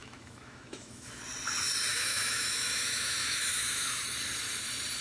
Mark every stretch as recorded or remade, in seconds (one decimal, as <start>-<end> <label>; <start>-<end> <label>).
0.0-1.2 remade; 1.2-1.9 recorded; 1.9-4.0 remade; 4.0-5.0 recorded